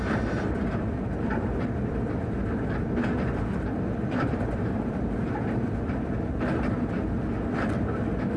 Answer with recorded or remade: remade